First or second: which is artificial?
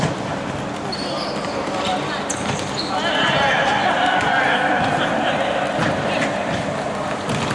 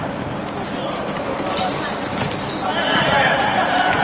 second